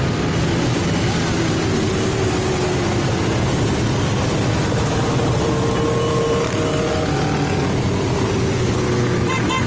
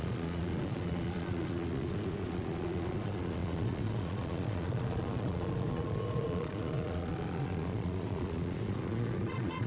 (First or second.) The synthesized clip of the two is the second